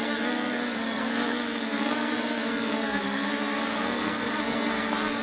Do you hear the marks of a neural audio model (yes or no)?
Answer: yes